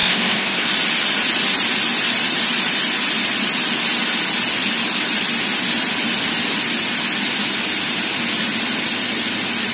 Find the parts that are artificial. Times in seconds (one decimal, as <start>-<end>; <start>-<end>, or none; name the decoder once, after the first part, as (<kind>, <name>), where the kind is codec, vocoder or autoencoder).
0.0-0.7 (codec, SNAC)